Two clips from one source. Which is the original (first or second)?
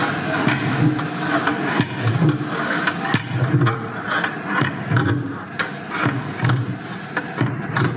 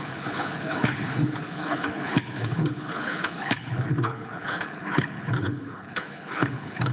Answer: first